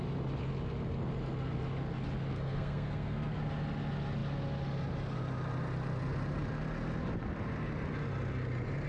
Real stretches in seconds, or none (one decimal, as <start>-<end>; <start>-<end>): 0.0-2.3; 3.4-8.9